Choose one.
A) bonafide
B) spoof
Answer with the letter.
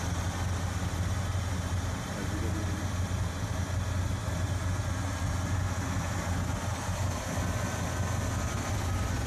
A